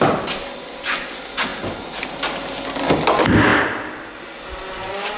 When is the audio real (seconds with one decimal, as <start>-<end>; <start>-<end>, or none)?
0.0-5.2